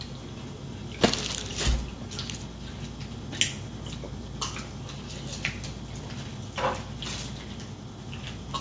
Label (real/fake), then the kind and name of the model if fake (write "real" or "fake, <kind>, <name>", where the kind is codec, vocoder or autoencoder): real